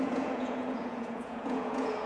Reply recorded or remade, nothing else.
remade